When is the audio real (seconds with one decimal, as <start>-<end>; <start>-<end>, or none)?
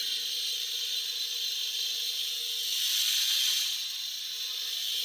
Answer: 0.0-5.0